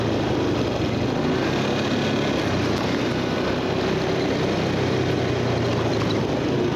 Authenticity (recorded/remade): recorded